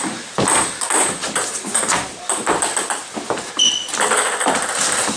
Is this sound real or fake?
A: fake